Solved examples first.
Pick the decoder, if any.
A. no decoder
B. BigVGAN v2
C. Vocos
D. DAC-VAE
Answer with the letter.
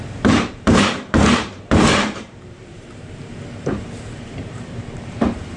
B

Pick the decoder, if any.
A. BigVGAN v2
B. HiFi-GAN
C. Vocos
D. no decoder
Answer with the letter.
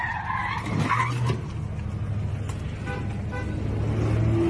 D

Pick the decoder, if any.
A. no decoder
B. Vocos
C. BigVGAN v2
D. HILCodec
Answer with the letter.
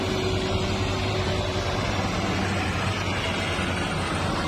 A